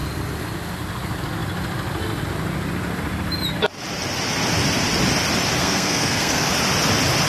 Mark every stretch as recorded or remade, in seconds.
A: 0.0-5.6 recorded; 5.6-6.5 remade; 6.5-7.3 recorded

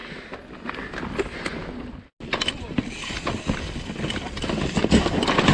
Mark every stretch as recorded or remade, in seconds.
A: 0.0-5.5 recorded

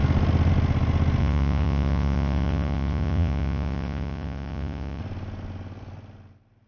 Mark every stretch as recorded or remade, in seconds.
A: 0.0-1.2 recorded; 1.2-5.0 remade; 5.0-6.7 recorded